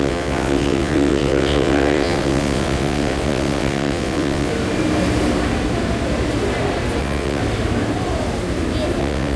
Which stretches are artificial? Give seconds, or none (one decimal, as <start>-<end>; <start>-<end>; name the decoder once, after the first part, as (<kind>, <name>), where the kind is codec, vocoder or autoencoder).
0.0-4.5 (vocoder, WaveNeXt); 7.0-7.4; 9.0-9.4